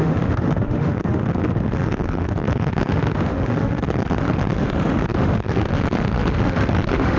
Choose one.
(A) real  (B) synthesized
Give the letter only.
B